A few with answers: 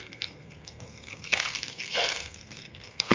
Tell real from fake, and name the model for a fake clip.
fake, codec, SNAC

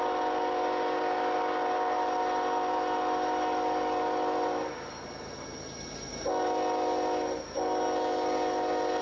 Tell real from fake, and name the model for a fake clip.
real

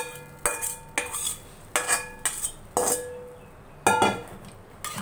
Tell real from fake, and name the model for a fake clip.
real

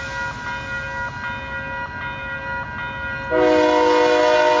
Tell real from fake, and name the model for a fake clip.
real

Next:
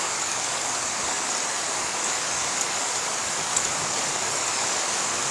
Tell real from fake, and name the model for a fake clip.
fake, codec, DAC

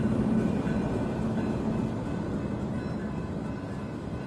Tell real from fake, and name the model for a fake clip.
real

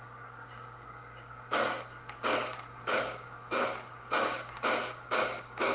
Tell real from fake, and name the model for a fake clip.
fake, codec, DAC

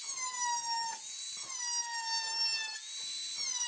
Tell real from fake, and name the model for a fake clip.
real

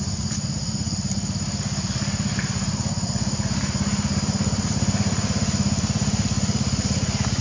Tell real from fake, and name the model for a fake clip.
real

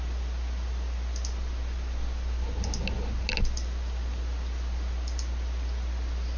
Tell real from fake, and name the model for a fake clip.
real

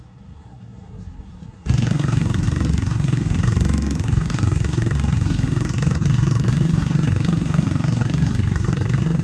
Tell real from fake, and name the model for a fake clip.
fake, codec, SNAC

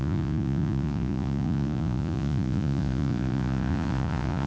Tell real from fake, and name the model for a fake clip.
fake, vocoder, Vocos